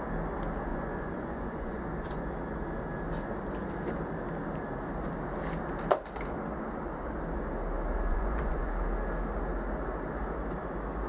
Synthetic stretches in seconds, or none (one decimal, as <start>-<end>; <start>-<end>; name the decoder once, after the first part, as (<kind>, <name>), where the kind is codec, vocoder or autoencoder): 0.7-2.3 (vocoder, Vocos); 8.1-8.7

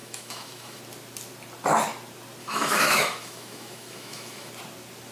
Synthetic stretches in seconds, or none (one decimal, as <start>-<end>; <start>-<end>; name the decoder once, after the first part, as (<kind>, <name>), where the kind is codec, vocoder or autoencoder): 0.0-0.8 (autoencoder, DAC-VAE); 2.4-4.5

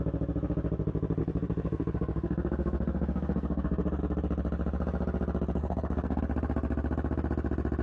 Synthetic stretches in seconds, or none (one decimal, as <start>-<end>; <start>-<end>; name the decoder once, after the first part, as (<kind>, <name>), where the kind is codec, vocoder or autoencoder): 1.2-4.0 (codec, SNAC); 5.6-6.2

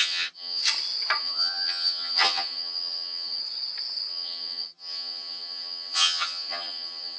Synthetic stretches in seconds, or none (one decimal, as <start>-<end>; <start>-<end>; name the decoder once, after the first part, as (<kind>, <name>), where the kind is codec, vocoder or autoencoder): 0.0-0.6 (vocoder, HiFi-GAN); 1.2-3.4; 4.1-7.2